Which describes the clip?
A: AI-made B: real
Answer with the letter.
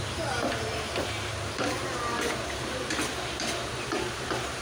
A